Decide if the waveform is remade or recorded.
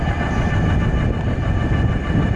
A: recorded